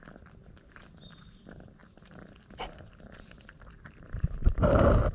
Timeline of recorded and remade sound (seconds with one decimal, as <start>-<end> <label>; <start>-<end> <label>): 0.0-1.8 recorded; 1.8-5.1 remade